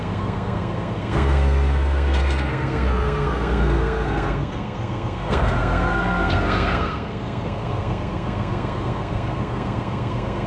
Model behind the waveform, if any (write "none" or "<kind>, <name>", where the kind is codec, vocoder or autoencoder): codec, SNAC